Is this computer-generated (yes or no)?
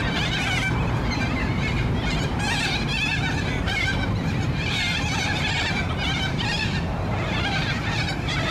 yes